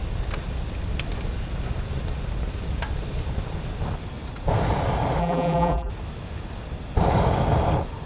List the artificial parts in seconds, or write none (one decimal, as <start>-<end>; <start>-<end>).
5.2-5.9